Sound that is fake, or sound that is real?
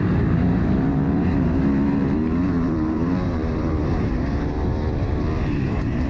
fake